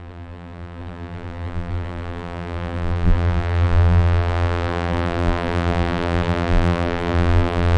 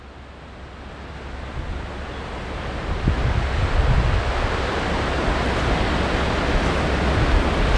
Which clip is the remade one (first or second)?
first